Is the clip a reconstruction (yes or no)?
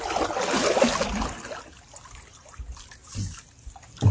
no